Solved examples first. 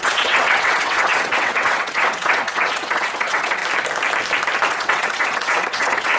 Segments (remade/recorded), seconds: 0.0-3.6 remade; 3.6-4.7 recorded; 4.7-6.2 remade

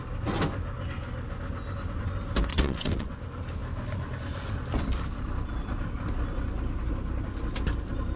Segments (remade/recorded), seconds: 0.0-2.5 recorded; 2.5-3.2 remade; 3.2-8.2 recorded

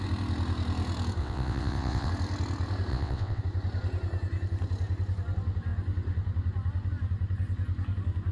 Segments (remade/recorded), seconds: 0.0-1.2 recorded; 1.2-2.1 remade; 2.1-2.9 recorded; 2.9-3.4 remade; 3.4-8.3 recorded

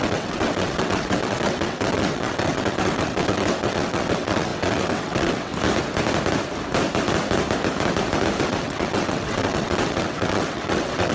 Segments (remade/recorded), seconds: 0.0-5.5 remade; 5.5-8.4 recorded; 8.4-11.1 remade

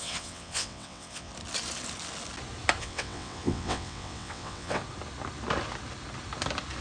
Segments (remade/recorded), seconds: 0.0-1.3 remade; 1.3-2.8 recorded; 2.8-4.8 remade; 4.8-6.8 recorded

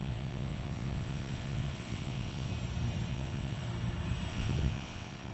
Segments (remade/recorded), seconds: 0.0-2.5 remade; 2.5-3.1 recorded; 3.1-3.6 remade; 3.6-4.3 recorded; 4.3-5.3 remade